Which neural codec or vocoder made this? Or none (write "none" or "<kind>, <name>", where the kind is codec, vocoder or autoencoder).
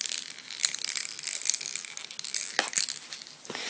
none